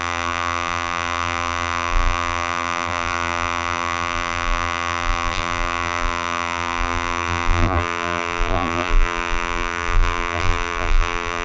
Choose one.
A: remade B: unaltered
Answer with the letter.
A